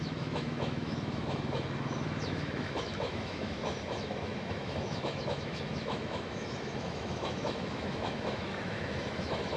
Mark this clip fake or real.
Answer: fake